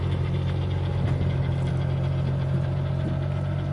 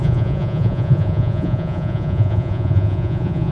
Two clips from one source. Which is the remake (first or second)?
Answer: second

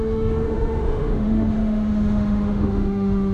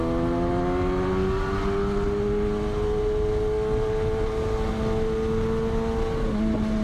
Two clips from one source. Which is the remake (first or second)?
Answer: first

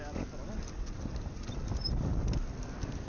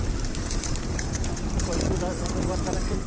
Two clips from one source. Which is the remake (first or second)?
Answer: second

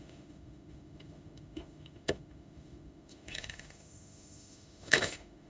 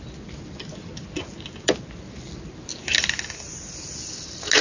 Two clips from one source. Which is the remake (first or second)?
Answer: first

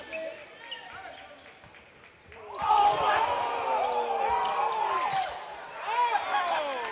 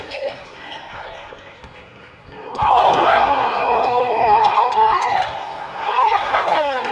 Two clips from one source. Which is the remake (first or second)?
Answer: second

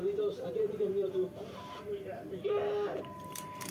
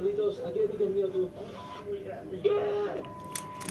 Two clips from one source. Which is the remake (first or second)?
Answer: first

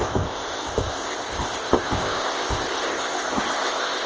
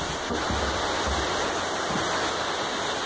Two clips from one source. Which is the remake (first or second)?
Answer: first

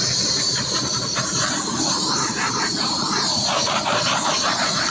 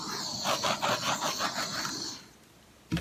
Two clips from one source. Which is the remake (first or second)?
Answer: first